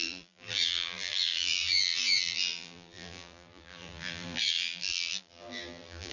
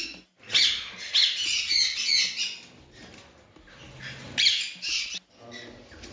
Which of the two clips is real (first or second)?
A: second